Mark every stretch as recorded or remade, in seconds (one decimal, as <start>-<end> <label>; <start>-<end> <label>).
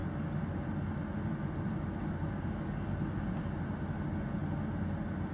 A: 0.0-5.3 recorded